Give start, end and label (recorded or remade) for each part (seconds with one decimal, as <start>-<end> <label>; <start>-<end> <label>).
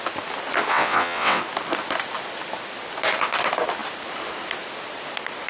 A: 0.0-0.7 recorded; 0.7-1.4 remade; 1.4-5.5 recorded